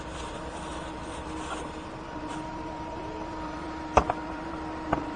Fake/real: fake